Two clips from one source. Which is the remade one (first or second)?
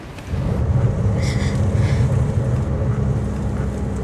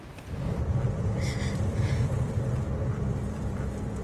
second